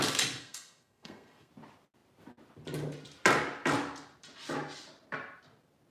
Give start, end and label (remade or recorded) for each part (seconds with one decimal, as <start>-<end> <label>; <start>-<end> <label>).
0.0-0.4 recorded; 0.4-1.5 remade; 1.5-5.9 recorded